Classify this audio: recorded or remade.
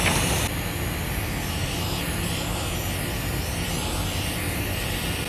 recorded